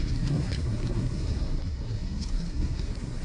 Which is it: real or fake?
fake